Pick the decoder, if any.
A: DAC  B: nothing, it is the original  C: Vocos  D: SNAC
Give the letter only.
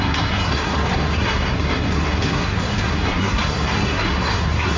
D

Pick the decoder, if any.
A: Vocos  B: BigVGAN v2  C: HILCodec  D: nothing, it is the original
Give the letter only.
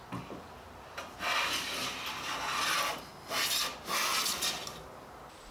D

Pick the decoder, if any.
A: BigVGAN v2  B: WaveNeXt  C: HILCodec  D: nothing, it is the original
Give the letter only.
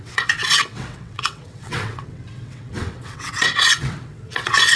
B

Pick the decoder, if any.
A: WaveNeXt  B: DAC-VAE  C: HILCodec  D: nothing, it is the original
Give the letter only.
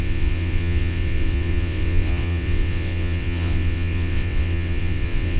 A